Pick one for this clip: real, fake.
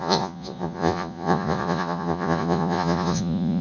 fake